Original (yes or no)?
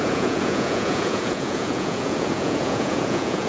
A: no